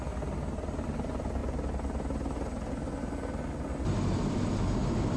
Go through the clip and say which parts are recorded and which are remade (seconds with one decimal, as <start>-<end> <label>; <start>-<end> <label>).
0.0-5.2 recorded